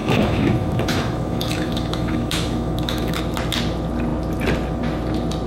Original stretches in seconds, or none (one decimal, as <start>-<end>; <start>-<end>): 3.2-5.5

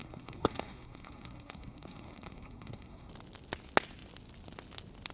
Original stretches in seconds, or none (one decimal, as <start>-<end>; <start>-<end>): 3.1-5.1

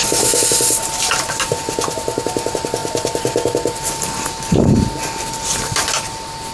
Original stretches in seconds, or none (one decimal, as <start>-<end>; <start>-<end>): 0.0-6.5

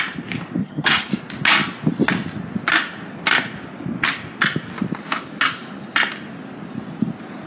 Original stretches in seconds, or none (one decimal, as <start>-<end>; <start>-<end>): 0.0-0.6; 1.1-7.5